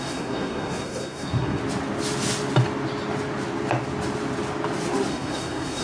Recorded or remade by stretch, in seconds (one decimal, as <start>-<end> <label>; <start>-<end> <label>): 0.0-1.6 remade; 1.6-5.1 recorded; 5.1-5.8 remade

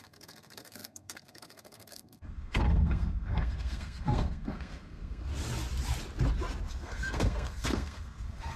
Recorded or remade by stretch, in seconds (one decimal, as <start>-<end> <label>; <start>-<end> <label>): 0.0-5.3 remade; 5.3-6.7 recorded; 6.7-8.6 remade